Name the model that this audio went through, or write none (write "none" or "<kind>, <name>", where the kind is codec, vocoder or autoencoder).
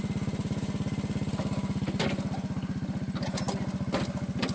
none